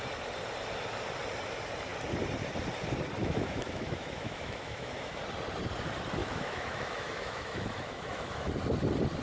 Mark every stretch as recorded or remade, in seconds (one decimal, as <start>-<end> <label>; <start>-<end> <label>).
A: 0.0-3.2 recorded; 3.2-5.2 remade; 5.2-6.2 recorded; 6.2-8.5 remade; 8.5-9.2 recorded